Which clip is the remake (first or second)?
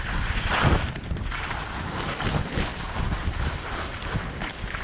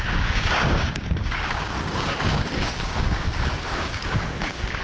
second